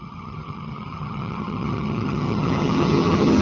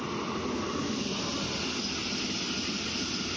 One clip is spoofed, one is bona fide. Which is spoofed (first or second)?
first